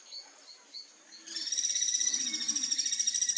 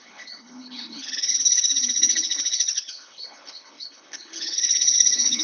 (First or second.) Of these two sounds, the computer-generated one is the second